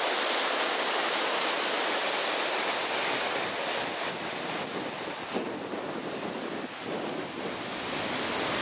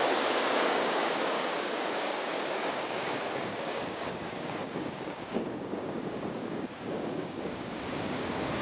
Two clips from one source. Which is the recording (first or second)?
first